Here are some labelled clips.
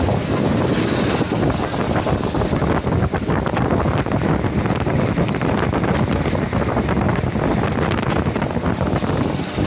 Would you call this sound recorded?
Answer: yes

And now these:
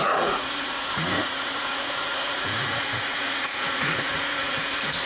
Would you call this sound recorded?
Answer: no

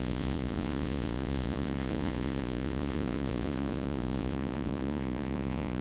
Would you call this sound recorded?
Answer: no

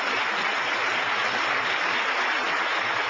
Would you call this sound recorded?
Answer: yes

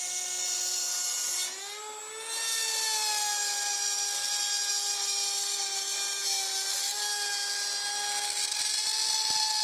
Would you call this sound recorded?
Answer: yes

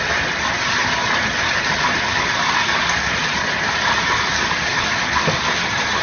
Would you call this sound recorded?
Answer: yes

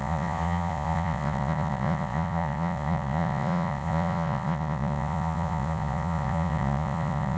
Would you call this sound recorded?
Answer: no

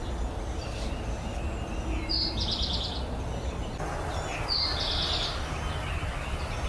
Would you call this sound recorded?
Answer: yes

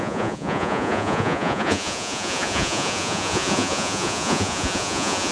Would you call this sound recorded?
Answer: no